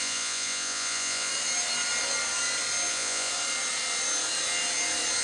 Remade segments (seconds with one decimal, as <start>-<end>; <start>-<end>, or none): 0.0-1.3; 2.9-3.3

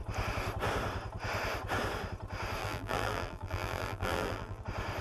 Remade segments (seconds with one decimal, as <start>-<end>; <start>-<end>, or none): 2.6-4.6

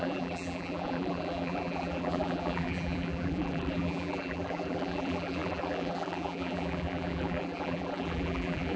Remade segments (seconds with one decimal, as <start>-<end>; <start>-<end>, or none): 0.0-8.8

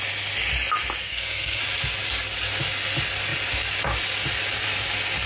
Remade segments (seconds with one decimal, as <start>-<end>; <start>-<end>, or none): 1.0-1.6

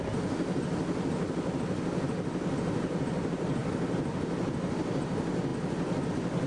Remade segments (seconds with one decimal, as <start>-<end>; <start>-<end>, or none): none

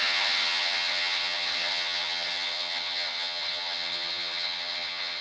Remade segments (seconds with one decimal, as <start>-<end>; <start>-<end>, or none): 0.0-5.2

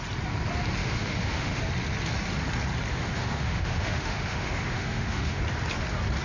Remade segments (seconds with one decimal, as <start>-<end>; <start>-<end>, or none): 0.8-1.6; 2.9-5.4

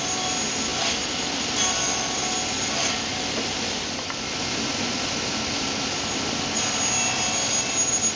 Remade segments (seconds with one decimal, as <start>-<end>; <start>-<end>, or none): none